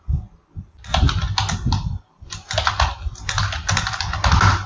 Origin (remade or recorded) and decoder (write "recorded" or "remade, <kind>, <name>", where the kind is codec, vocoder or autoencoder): recorded